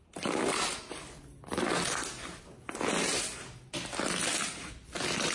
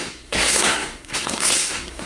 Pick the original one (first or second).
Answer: first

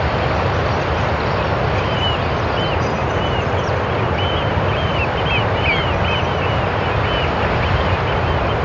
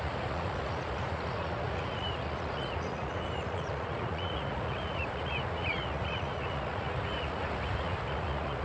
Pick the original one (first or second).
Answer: first